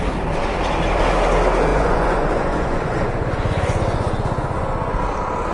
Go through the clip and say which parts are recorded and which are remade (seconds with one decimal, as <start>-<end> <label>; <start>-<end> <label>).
0.0-1.7 recorded; 1.7-5.0 remade; 5.0-5.5 recorded